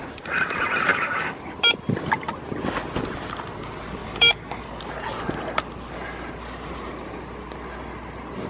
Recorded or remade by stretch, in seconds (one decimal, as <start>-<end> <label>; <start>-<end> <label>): 0.0-0.9 recorded; 0.9-1.4 remade; 1.4-4.0 recorded; 4.0-4.8 remade; 4.8-8.5 recorded